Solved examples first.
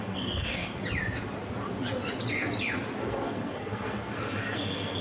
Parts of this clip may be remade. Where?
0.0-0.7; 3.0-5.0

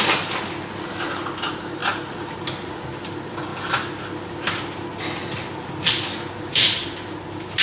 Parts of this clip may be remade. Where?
none

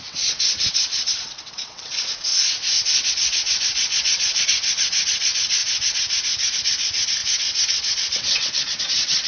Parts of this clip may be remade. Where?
0.0-2.3; 3.1-5.6; 6.6-9.3

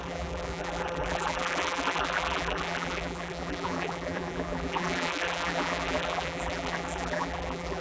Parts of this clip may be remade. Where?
0.0-7.8